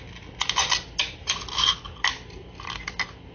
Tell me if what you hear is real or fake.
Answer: real